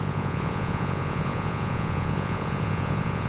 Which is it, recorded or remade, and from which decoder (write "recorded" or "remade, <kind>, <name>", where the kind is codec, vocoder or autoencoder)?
remade, vocoder, Vocos